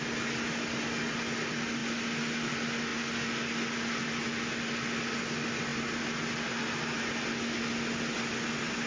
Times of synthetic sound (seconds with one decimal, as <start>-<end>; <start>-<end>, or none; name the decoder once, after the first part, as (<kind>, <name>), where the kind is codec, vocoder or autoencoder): none